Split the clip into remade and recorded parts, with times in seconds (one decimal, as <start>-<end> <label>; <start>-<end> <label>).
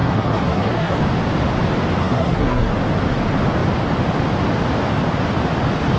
0.0-1.0 remade; 1.0-2.0 recorded; 2.0-2.7 remade; 2.7-6.0 recorded